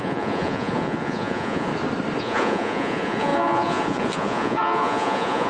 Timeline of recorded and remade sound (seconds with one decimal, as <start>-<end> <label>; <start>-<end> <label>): 0.0-1.7 remade; 1.7-2.2 recorded; 2.2-5.5 remade